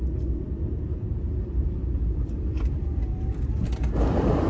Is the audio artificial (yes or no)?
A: no